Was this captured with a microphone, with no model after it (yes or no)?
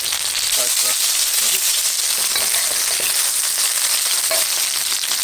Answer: yes